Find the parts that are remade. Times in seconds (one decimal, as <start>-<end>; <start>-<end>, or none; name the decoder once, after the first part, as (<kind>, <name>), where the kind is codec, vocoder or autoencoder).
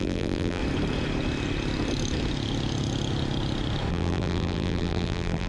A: 0.0-0.6 (vocoder, BigVGAN v2); 3.9-5.5